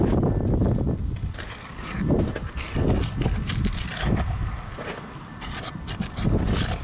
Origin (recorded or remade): recorded